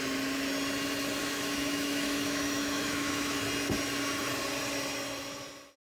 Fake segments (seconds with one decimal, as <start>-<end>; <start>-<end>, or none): 1.2-3.4

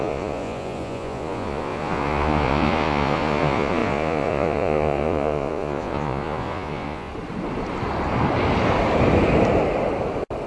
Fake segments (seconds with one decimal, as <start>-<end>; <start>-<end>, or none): 0.0-7.1

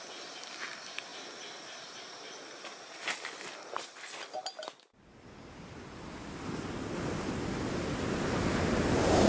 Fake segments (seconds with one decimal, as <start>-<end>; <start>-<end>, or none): none

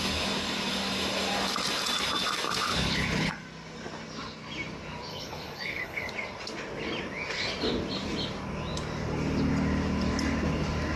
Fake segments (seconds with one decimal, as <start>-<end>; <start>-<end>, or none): 2.7-3.3; 5.1-6.1

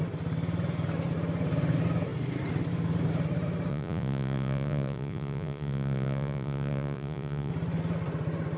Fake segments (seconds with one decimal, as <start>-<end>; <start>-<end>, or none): 3.7-7.5

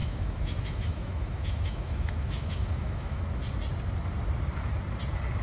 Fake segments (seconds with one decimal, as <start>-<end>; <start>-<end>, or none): 0.0-3.2